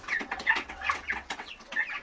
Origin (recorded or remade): remade